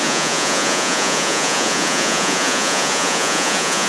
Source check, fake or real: fake